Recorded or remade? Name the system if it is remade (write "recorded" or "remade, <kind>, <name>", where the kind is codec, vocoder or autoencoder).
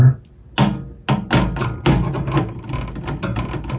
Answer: recorded